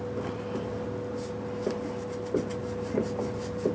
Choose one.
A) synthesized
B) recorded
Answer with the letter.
B